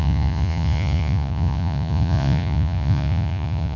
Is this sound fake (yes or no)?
yes